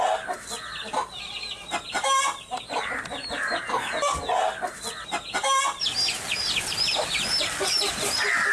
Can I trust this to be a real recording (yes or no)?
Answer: yes